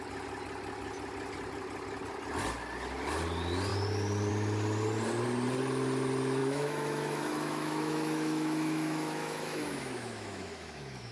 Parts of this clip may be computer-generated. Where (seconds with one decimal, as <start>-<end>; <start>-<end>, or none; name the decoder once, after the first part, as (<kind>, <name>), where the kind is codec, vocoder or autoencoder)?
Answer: 6.4-11.1 (autoencoder, DAC-VAE)